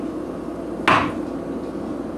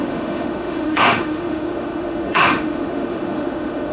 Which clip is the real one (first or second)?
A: first